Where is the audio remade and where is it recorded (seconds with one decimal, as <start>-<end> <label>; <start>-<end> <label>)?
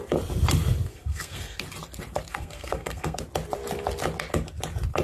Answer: 0.0-0.9 recorded; 0.9-1.6 remade; 1.6-2.3 recorded; 2.3-3.2 remade; 3.2-5.0 recorded